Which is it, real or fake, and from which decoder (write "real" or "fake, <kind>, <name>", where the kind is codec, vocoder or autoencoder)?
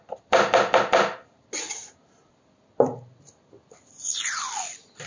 real